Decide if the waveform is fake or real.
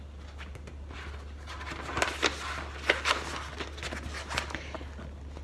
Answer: real